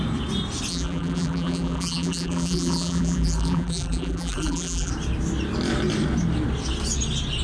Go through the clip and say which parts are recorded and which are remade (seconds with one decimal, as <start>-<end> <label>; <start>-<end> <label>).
0.0-0.7 recorded; 0.7-4.9 remade; 4.9-7.4 recorded